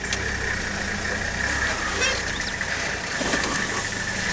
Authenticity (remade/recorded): recorded